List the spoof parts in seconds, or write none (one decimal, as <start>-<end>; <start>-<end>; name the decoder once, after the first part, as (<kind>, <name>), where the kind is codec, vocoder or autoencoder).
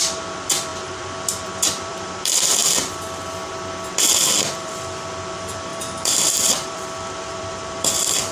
0.0-2.6 (vocoder, BigVGAN v2); 4.3-8.3